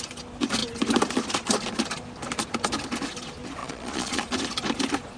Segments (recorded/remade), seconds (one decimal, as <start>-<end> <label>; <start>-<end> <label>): 0.0-3.6 recorded; 3.6-4.2 remade; 4.2-5.2 recorded